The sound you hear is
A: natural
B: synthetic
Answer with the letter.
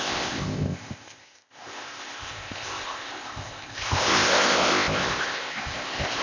B